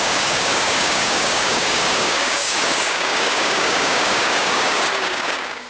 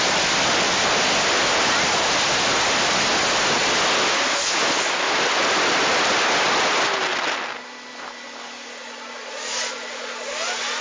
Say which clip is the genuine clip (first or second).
second